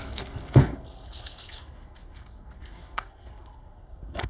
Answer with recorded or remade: remade